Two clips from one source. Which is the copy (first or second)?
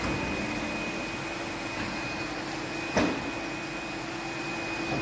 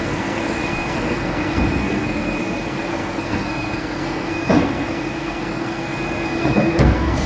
second